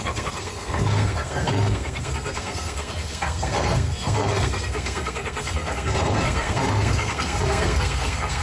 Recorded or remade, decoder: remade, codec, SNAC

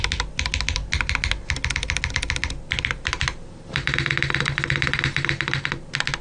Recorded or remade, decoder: recorded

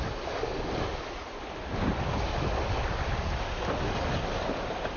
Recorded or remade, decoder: recorded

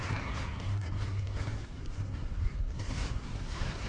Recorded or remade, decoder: remade, codec, SNAC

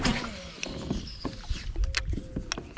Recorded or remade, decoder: recorded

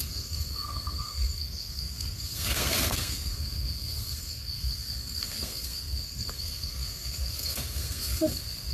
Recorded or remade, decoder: remade, codec, SNAC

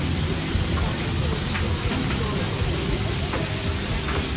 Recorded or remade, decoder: recorded